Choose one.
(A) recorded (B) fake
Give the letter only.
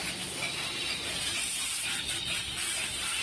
A